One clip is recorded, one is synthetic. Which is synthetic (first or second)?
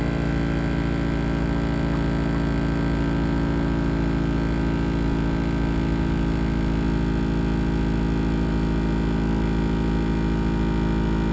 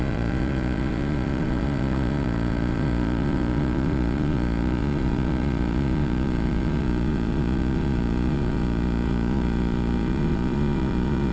second